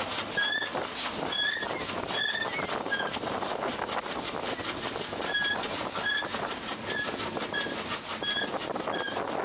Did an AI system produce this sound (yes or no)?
no